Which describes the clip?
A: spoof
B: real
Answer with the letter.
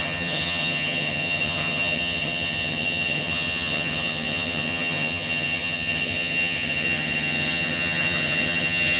A